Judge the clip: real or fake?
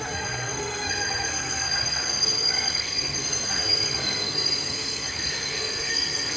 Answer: fake